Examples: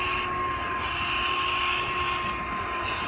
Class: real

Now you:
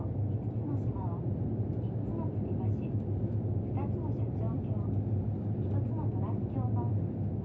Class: real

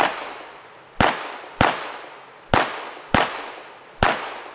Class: real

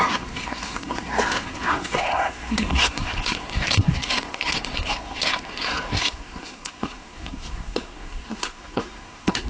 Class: fake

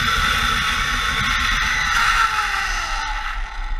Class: real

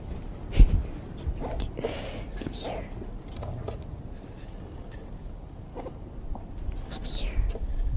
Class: real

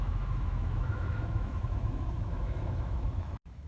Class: fake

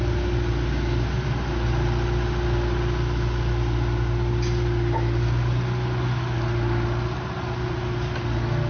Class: real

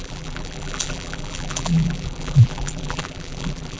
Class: fake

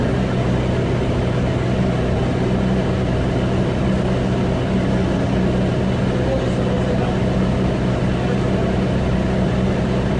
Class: real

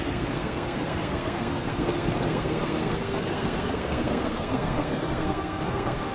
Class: fake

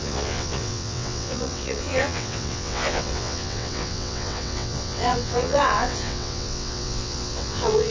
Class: fake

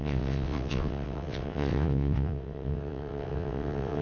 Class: fake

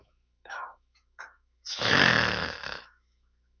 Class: fake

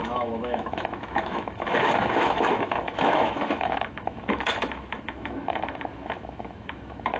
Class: fake